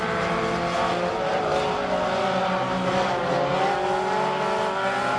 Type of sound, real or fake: real